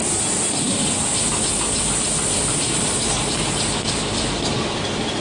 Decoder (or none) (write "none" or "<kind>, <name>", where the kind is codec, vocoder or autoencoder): none